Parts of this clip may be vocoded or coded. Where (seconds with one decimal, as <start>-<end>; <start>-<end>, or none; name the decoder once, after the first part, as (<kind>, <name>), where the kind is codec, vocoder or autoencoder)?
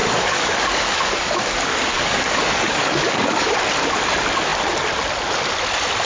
0.0-3.6 (codec, DAC)